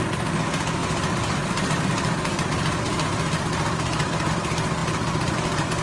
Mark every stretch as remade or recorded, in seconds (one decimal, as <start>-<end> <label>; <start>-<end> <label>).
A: 0.0-4.8 recorded; 4.8-5.3 remade; 5.3-5.8 recorded